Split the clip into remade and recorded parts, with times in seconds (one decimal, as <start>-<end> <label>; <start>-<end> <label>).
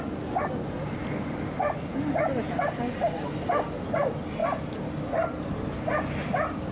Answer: 0.0-6.7 recorded